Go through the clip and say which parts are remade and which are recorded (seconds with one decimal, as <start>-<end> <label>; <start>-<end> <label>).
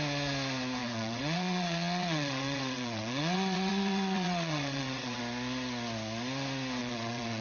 0.0-0.8 recorded; 0.8-5.2 remade; 5.2-6.8 recorded; 6.8-7.4 remade